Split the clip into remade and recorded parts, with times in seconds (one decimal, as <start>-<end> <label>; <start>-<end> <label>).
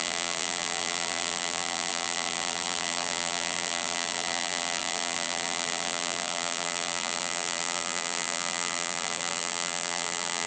0.0-10.5 remade